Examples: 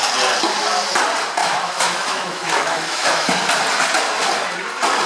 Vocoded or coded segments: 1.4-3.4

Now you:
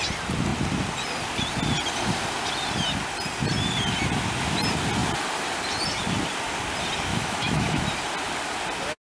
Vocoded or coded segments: 7.1-7.8

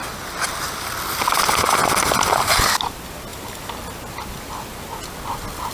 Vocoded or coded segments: none